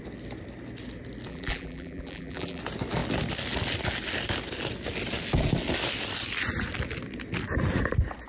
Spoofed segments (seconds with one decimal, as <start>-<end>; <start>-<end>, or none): 1.3-2.6